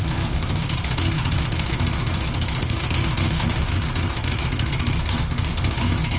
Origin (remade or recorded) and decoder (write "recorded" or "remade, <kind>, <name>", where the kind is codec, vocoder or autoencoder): remade, autoencoder, DAC-VAE